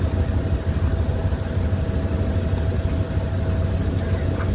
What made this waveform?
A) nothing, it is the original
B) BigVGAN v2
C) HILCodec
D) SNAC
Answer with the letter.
A